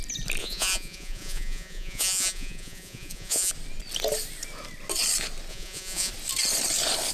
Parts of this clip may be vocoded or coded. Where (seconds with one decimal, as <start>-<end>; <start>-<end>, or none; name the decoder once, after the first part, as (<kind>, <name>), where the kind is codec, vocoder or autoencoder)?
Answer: 0.4-3.5 (vocoder, Vocos); 5.5-6.1